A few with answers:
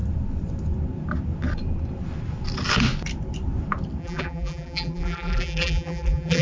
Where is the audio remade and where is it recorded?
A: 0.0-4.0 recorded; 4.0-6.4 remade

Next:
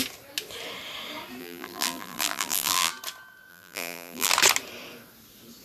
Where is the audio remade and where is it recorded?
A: 0.0-1.4 recorded; 1.4-2.9 remade; 2.9-3.5 recorded; 3.5-4.3 remade; 4.3-5.6 recorded

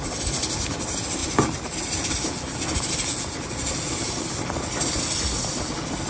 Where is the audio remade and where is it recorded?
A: 0.0-1.2 recorded; 1.2-4.9 remade; 4.9-6.1 recorded